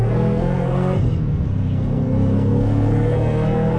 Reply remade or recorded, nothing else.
remade